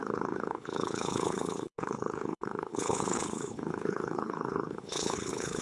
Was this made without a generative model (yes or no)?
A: no